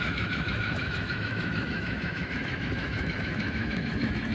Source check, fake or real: fake